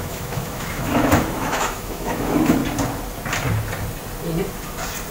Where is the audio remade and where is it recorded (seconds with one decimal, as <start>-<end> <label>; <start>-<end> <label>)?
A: 0.0-2.6 remade; 2.6-5.1 recorded